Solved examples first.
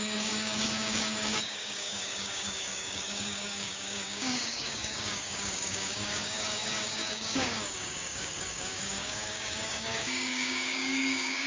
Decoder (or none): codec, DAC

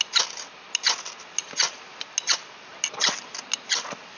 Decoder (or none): none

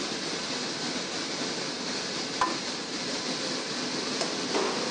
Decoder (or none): none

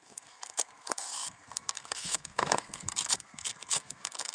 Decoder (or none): codec, SNAC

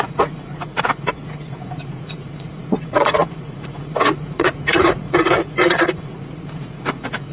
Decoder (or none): vocoder, Vocos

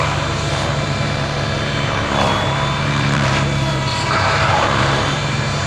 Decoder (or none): vocoder, BigVGAN v2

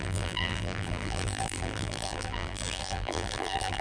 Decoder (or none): vocoder, BigVGAN v2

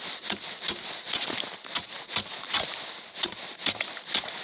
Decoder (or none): none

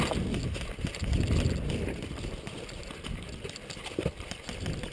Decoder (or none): none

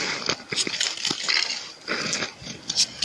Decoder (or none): none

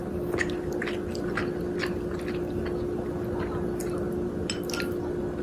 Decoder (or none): none